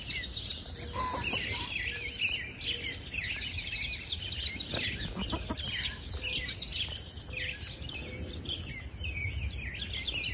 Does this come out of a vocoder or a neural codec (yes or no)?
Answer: no